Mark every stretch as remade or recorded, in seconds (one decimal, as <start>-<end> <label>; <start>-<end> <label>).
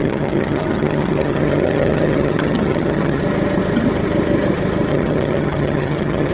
0.0-3.2 remade; 3.2-4.9 recorded; 4.9-6.3 remade